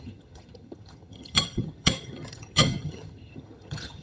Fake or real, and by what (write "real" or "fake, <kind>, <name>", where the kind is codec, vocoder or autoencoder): fake, vocoder, HiFi-GAN